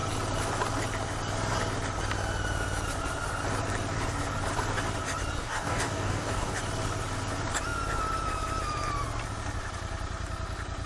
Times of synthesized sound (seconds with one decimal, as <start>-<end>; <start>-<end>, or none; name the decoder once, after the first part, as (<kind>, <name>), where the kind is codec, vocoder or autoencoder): 5.4-6.6 (codec, DAC)